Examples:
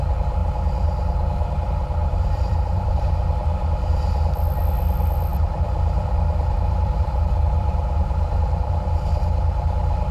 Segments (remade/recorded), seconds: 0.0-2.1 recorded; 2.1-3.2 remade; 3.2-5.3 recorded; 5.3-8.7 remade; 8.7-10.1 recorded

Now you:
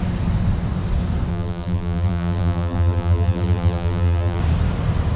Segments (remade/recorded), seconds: 0.0-1.3 recorded; 1.3-4.4 remade; 4.4-5.2 recorded

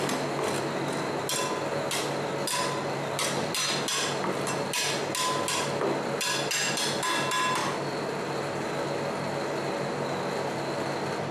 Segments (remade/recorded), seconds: 0.0-11.3 recorded

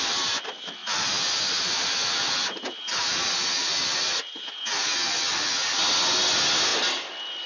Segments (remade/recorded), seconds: 0.0-7.5 recorded

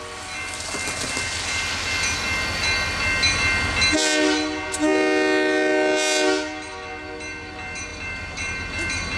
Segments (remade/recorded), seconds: 0.0-7.9 recorded; 7.9-8.7 remade; 8.7-9.2 recorded

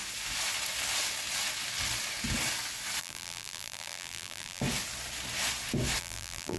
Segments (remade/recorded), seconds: 0.0-3.0 recorded; 3.0-4.6 remade; 4.6-6.0 recorded; 6.0-6.6 remade

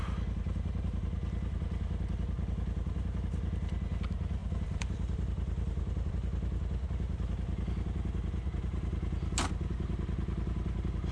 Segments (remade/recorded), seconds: 0.0-4.4 recorded; 4.4-6.1 remade; 6.1-11.1 recorded

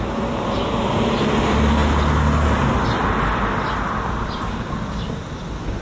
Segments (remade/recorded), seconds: 0.0-5.8 recorded